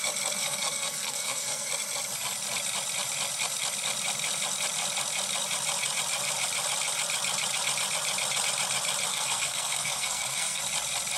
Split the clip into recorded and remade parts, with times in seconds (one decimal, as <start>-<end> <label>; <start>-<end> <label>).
0.0-0.4 recorded; 0.4-1.7 remade; 1.7-9.1 recorded; 9.1-10.6 remade; 10.6-11.2 recorded